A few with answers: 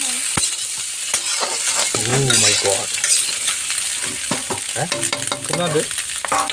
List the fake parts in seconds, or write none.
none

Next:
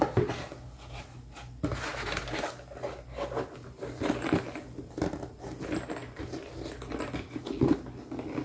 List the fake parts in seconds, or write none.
none

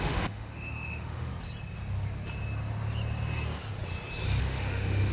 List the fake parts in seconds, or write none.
0.0-1.3 (autoencoder, DAC-VAE); 4.4-5.1

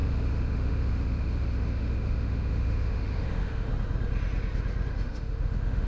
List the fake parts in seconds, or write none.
0.0-3.7 (autoencoder, DAC-VAE); 4.9-5.9